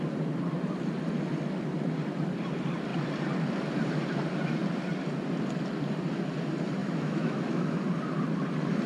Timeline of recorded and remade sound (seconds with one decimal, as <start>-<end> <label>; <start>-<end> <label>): 0.0-6.8 recorded; 6.8-7.8 remade; 7.8-8.9 recorded